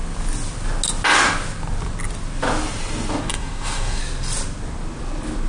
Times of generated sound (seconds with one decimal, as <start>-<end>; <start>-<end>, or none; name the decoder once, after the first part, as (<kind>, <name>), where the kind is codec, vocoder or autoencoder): 3.3-4.0 (codec, DAC)